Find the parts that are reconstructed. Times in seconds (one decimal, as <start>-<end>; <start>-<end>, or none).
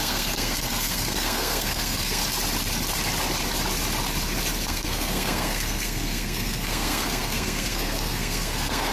0.0-2.2; 4.6-8.9